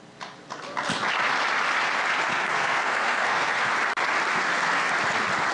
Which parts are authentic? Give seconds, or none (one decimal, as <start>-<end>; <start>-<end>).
0.0-2.3; 3.7-4.3; 4.9-5.5